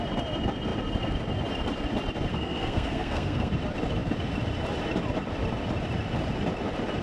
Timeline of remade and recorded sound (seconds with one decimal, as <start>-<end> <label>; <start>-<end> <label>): 0.0-2.3 recorded; 2.3-3.5 remade; 3.5-7.0 recorded

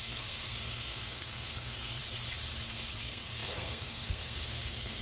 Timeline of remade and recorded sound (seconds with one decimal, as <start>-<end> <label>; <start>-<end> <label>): 0.0-2.0 remade; 2.0-3.0 recorded; 3.0-5.0 remade

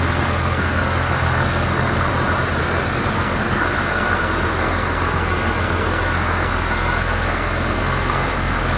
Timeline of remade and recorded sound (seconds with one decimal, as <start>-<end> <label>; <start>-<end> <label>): 0.0-2.1 remade; 2.1-2.6 recorded; 2.6-8.8 remade